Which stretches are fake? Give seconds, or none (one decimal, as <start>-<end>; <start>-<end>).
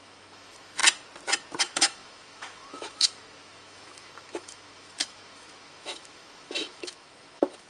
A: 0.0-0.8; 1.6-7.7